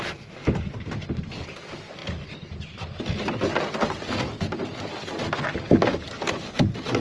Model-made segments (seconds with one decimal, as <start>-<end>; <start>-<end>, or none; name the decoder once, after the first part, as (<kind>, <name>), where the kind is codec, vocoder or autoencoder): none